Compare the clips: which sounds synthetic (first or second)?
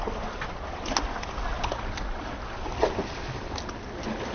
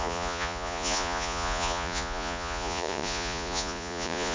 second